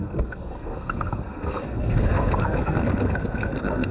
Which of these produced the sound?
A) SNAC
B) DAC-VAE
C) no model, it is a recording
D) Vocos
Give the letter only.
A